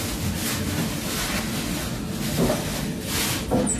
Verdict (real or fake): real